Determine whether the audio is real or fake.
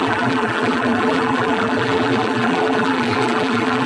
fake